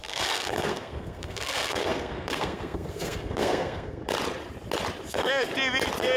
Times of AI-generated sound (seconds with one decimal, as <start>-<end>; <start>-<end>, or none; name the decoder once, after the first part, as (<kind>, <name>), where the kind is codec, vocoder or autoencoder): 0.0-4.0 (codec, SNAC); 5.1-5.5